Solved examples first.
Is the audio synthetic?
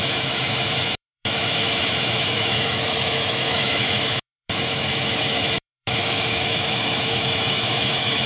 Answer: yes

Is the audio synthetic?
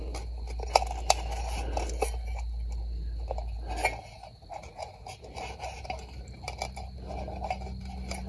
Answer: no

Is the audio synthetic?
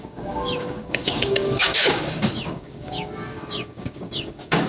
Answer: yes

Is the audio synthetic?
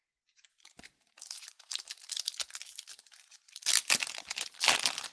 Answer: no